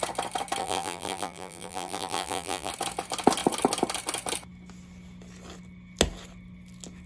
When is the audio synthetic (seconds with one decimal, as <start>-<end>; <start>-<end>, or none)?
0.6-2.7